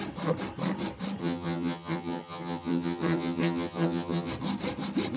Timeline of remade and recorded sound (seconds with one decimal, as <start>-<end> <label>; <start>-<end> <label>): 0.0-1.2 recorded; 1.2-4.3 remade; 4.3-5.2 recorded